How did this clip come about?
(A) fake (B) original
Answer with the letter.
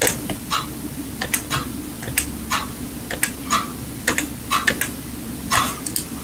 B